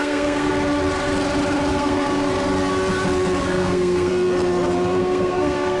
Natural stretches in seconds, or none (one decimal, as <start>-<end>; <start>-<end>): 0.5-1.7; 2.3-3.4; 4.1-5.0